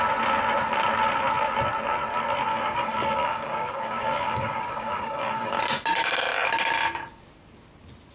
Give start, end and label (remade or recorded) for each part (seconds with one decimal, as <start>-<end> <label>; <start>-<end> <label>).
0.0-2.5 recorded; 2.5-5.6 remade; 5.6-8.1 recorded

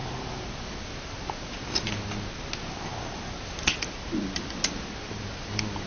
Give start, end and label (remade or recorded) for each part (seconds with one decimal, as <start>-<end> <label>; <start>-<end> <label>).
0.0-5.9 recorded